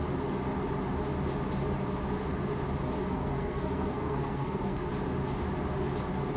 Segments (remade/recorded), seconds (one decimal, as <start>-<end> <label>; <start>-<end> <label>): 0.0-3.0 recorded; 3.0-4.9 remade; 4.9-6.4 recorded